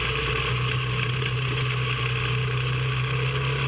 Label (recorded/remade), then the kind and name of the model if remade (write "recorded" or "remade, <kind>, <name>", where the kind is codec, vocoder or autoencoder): recorded